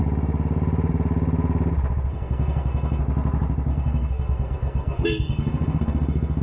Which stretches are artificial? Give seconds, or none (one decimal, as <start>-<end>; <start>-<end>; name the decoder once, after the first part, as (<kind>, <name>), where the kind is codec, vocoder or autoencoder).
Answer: 2.1-3.0 (codec, SNAC); 3.7-6.4